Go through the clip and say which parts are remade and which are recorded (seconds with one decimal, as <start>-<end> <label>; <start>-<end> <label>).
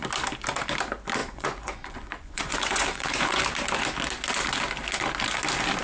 0.0-1.2 recorded; 1.2-3.4 remade; 3.4-5.8 recorded